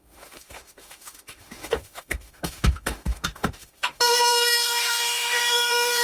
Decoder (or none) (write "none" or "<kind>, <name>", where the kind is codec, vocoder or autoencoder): autoencoder, DAC-VAE